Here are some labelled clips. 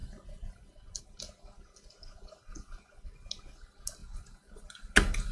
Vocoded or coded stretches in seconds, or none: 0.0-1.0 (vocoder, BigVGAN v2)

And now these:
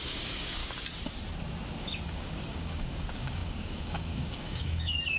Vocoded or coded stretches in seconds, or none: 0.0-0.6 (codec, DAC); 1.8-5.2

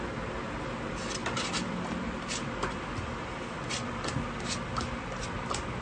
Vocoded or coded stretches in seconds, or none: 1.2-4.5 (vocoder, BigVGAN v2)

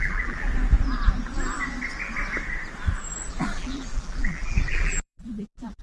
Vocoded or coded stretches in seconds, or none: 0.0-0.5 (vocoder, BigVGAN v2); 3.3-5.8